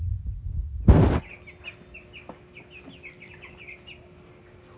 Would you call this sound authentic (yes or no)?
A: yes